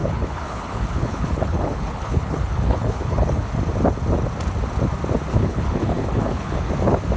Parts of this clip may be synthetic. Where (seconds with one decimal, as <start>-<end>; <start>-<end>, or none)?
0.0-3.5; 5.3-6.7